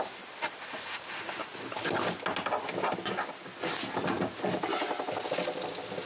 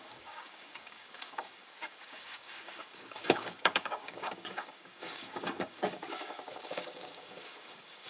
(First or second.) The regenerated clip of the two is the second